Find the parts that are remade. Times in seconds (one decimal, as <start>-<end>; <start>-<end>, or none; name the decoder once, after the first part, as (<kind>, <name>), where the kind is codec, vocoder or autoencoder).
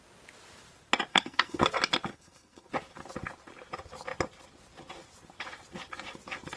1.1-1.6 (codec, SNAC); 2.1-2.7